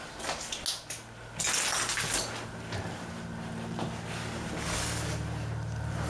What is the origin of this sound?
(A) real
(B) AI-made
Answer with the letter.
A